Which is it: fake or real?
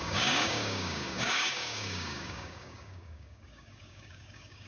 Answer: fake